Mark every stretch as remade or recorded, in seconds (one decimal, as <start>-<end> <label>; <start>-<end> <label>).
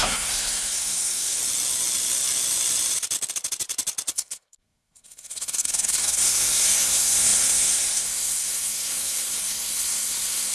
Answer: 0.0-1.4 remade; 1.4-4.1 recorded; 4.1-10.5 remade